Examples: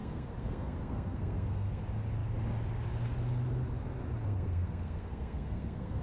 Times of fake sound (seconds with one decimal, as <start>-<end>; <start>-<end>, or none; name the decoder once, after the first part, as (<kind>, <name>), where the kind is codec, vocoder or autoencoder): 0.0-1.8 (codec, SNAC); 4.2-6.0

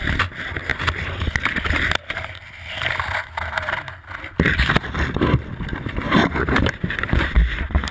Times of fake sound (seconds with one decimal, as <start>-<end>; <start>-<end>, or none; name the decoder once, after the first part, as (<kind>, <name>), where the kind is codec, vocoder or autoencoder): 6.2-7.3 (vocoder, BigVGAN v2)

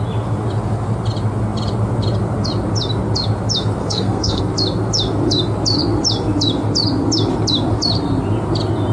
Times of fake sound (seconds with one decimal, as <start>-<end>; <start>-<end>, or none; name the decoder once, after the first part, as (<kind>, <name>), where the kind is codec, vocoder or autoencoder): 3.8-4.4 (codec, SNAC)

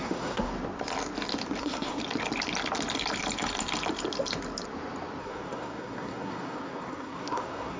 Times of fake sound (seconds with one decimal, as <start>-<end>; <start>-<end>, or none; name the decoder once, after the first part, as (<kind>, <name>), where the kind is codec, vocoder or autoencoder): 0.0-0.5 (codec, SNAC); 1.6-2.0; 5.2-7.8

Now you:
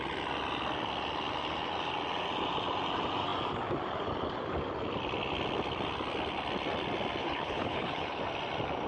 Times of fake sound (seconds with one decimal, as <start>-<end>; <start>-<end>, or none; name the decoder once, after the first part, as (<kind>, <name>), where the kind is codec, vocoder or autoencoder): 7.2-8.2 (codec, HILCodec)